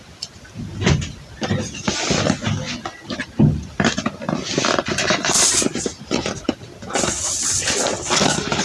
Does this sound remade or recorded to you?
recorded